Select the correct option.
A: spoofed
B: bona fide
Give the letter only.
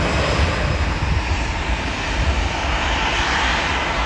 B